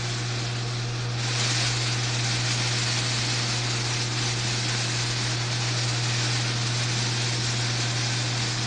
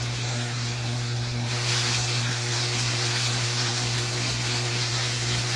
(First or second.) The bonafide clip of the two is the first